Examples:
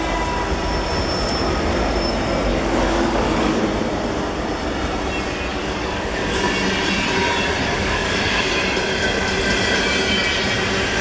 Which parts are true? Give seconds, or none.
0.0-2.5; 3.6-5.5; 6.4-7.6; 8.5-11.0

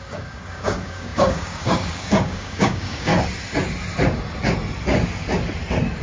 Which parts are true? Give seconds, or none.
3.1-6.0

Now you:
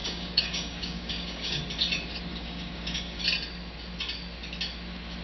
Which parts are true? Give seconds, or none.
1.6-2.3; 3.2-5.2

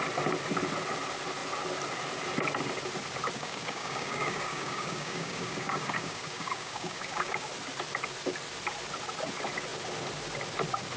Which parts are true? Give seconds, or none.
0.0-3.4; 7.5-11.0

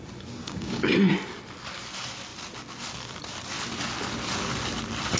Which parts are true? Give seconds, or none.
0.0-0.4; 0.9-5.2

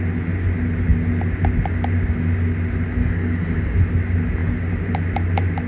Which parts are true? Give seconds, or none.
0.0-3.0; 3.8-5.7

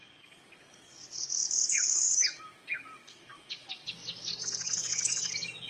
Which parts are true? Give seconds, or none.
none